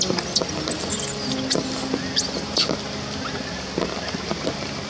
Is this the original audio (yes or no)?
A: yes